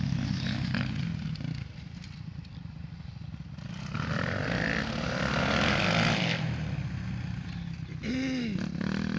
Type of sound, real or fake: real